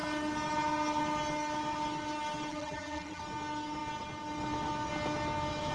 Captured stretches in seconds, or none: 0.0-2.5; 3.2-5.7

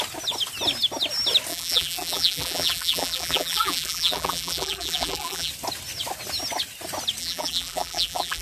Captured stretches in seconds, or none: 0.0-1.5; 5.5-7.2

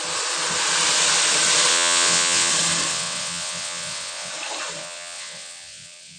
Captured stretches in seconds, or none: 0.0-1.7; 2.5-2.9; 4.3-4.8